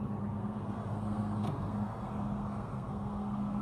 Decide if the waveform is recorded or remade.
remade